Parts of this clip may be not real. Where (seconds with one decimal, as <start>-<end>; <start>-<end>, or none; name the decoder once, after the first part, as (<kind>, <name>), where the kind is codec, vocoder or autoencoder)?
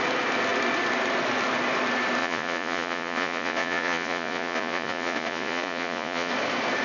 2.2-6.3 (vocoder, Vocos)